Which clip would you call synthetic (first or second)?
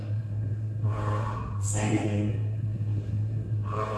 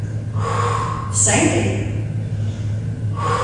first